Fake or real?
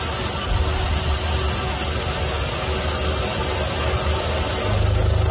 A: real